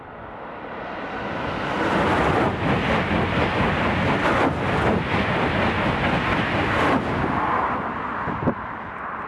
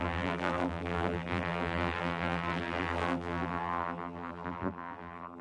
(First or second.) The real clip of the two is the first